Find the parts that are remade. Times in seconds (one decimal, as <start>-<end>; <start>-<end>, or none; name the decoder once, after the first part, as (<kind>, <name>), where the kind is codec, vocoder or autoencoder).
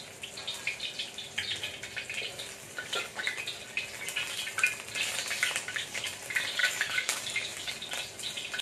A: 2.6-3.4 (codec, DAC); 5.4-6.1; 6.6-7.7